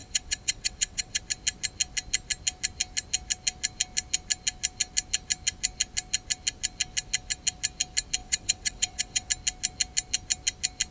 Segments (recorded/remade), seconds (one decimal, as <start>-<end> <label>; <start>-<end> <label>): 0.0-1.2 remade; 1.2-8.2 recorded; 8.2-9.3 remade; 9.3-10.9 recorded